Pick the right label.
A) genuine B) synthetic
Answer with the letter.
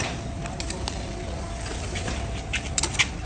A